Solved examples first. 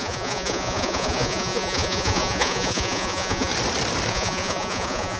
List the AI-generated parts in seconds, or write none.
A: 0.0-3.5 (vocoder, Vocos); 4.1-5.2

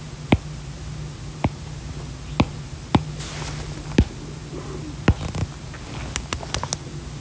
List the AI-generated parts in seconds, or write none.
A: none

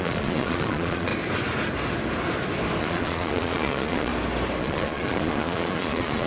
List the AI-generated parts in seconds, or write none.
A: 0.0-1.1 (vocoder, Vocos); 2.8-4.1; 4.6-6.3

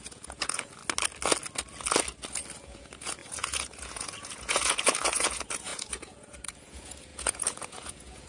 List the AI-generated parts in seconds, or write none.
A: 0.0-0.8 (vocoder, Vocos); 2.6-8.3

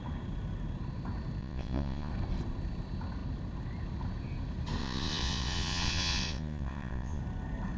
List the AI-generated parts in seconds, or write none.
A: 1.4-2.1 (vocoder, Vocos); 4.8-7.2

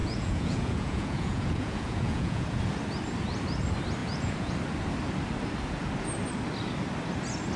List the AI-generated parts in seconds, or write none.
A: 0.0-2.6 (vocoder, Vocos); 4.0-4.5

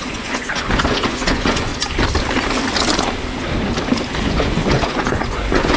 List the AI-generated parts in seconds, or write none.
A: 0.0-1.7 (vocoder, Vocos); 4.3-5.8

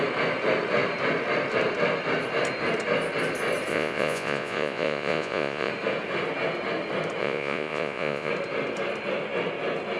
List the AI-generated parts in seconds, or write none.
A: 3.7-5.7 (vocoder, Vocos); 7.2-8.3